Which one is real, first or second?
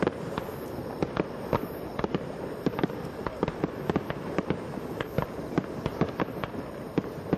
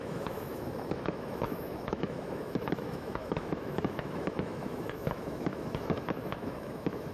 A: first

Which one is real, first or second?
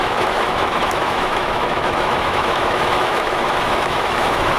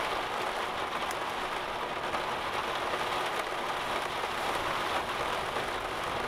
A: second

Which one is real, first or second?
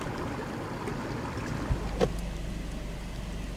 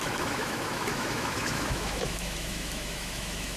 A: first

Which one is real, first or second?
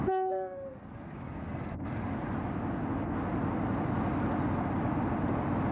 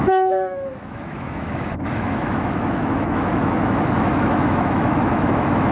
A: first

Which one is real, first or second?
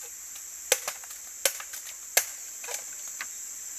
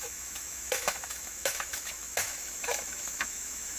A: first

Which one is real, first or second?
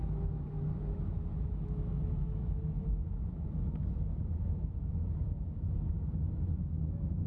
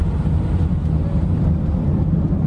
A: second